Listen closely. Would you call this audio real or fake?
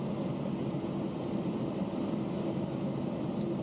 real